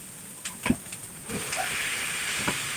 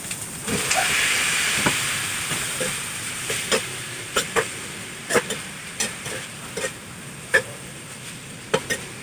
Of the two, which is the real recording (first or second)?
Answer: first